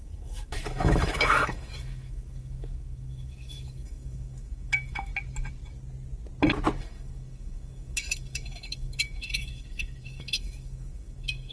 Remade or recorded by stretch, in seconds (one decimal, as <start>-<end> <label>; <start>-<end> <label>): 0.0-5.1 remade; 5.1-6.8 recorded; 6.8-11.5 remade